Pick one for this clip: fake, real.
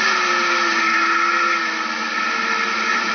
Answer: real